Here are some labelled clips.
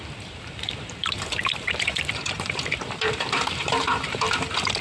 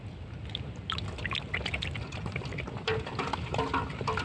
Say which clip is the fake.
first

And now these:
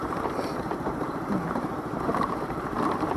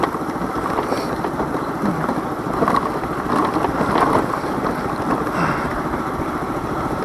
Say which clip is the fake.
first